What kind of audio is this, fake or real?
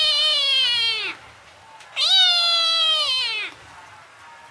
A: real